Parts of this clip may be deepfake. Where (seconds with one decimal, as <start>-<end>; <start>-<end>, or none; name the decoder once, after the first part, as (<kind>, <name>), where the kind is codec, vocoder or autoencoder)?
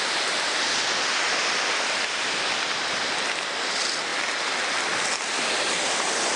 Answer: none